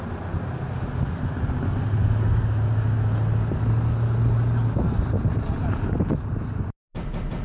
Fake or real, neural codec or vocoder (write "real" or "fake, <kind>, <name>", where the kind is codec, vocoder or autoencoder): real